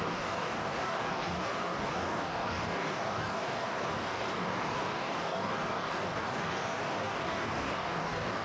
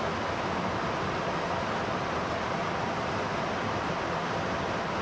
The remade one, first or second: first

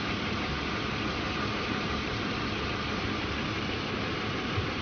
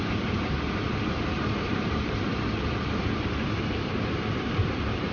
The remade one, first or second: second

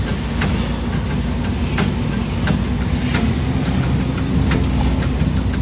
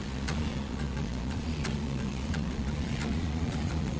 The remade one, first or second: second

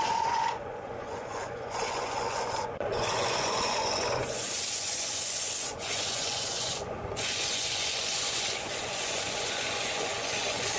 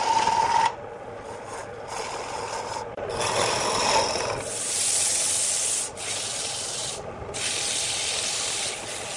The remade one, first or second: first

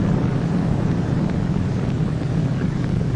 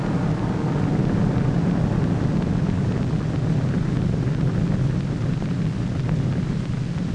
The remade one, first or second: first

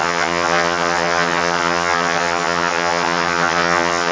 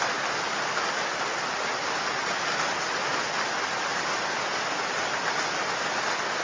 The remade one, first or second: first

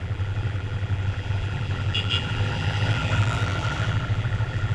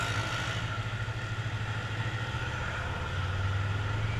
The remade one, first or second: first